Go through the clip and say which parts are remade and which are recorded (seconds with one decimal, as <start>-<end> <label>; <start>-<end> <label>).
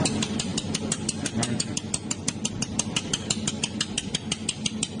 0.0-5.0 recorded